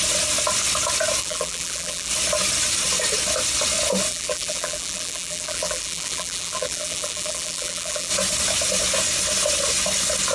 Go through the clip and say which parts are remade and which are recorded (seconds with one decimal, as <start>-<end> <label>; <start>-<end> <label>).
0.0-1.2 recorded; 1.2-2.1 remade; 2.1-4.1 recorded; 4.1-8.1 remade; 8.1-10.3 recorded

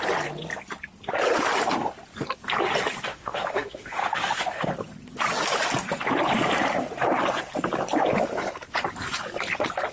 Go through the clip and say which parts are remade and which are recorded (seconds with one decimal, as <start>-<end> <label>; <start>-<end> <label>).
0.0-3.1 recorded; 3.1-4.7 remade; 4.7-9.9 recorded

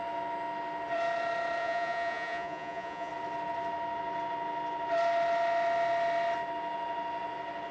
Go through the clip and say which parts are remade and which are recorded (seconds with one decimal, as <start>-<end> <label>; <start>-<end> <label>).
0.0-1.6 recorded; 1.6-3.1 remade; 3.1-7.7 recorded

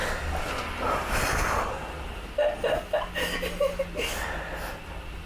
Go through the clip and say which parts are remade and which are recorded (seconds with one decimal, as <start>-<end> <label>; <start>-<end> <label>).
0.0-5.3 recorded